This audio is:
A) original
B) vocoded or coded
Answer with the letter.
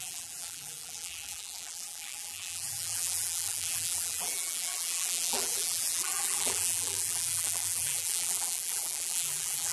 B